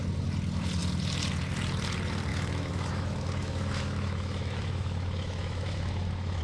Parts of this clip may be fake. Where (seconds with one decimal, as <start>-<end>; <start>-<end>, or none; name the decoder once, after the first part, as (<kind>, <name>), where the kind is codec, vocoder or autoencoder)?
2.3-6.4 (autoencoder, DAC-VAE)